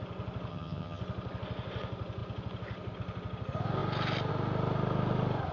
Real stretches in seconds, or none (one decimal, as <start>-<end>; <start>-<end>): 0.0-0.5; 1.0-5.5